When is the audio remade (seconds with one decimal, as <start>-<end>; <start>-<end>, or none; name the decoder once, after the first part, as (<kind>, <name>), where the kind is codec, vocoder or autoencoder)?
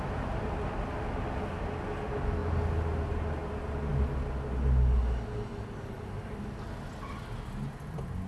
none